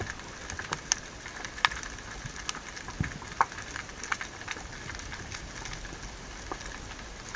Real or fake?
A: real